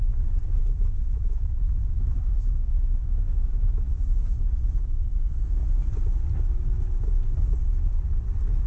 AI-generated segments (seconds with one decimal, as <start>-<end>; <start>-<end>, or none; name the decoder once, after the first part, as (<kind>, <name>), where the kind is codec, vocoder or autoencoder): 0.6-4.0 (autoencoder, DAC-VAE)